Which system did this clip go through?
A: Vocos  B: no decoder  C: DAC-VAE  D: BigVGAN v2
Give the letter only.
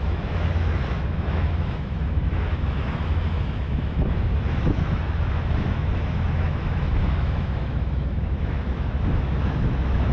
C